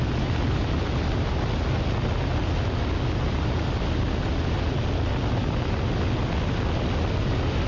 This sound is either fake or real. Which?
real